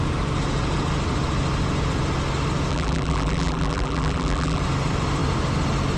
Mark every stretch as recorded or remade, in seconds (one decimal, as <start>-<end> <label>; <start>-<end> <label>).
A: 0.0-2.7 recorded; 2.7-4.6 remade; 4.6-6.0 recorded